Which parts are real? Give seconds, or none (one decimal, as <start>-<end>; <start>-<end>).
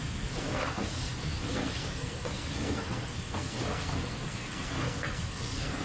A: none